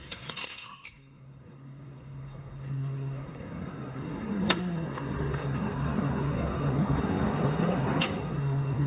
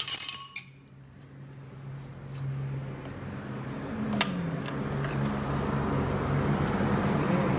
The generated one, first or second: first